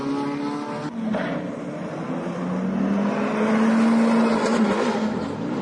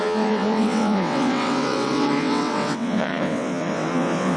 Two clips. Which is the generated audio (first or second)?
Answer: second